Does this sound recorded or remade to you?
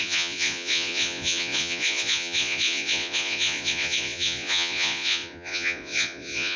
remade